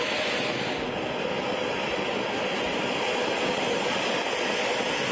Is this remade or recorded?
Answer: recorded